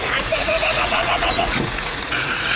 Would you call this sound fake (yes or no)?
yes